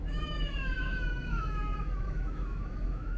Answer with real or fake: fake